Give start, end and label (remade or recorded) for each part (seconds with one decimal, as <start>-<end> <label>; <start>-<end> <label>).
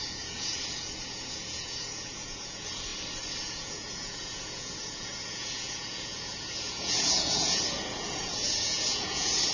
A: 0.0-2.9 remade; 2.9-3.4 recorded; 3.4-9.5 remade